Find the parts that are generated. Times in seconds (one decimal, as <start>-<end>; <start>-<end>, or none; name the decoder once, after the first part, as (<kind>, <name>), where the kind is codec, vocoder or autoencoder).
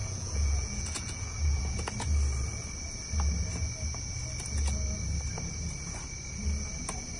0.0-1.9 (vocoder, Vocos)